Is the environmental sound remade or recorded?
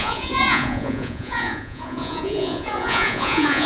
remade